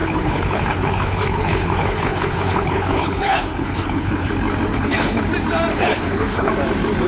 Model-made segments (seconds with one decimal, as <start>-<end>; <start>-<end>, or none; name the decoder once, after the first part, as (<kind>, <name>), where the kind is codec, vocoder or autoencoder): 0.0-4.3 (codec, HILCodec); 4.7-5.2; 5.7-6.5